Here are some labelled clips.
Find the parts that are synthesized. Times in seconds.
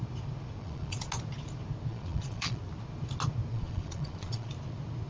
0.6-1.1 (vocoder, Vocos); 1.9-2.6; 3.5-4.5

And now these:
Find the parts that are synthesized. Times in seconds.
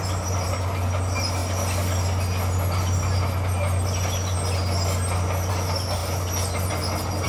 none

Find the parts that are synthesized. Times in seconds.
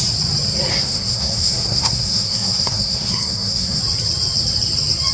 0.7-3.8 (codec, SNAC)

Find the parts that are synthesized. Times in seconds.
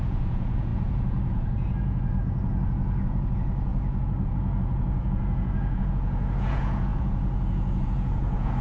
0.0-8.6 (vocoder, Vocos)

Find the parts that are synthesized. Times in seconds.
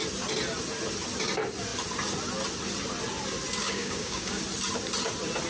3.6-4.4 (codec, DAC)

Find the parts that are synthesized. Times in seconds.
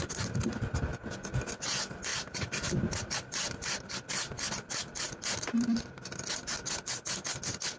2.1-5.9 (vocoder, BigVGAN v2)